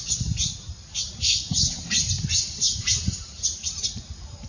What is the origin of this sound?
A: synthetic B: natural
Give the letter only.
B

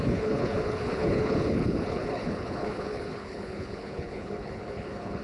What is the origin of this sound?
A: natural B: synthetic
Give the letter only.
B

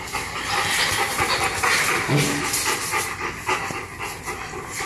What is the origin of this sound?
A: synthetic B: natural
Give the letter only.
B